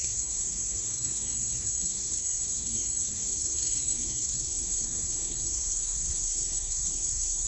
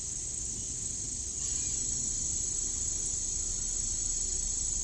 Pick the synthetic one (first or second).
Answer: first